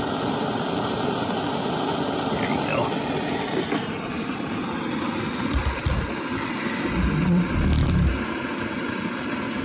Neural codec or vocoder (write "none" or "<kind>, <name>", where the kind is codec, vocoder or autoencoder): none